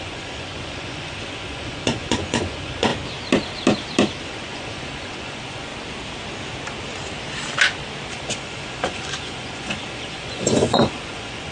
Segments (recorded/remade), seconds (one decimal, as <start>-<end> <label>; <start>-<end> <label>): 0.0-2.9 remade; 2.9-4.2 recorded; 4.2-5.7 remade; 5.7-8.1 recorded; 8.1-11.5 remade